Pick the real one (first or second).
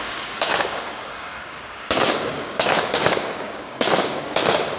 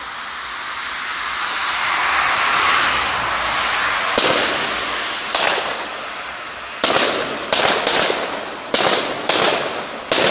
second